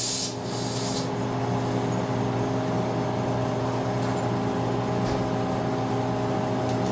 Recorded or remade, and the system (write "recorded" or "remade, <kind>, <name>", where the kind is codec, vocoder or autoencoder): recorded